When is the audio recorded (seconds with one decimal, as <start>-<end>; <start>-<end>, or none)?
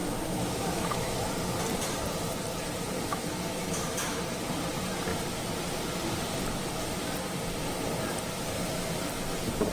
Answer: 1.3-3.1; 4.2-9.7